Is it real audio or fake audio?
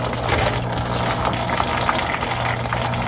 real